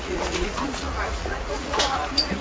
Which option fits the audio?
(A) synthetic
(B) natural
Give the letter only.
A